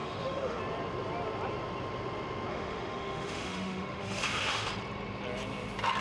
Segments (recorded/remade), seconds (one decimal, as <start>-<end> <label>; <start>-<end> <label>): 0.0-0.6 remade; 0.6-2.5 recorded; 2.5-4.7 remade; 4.7-6.0 recorded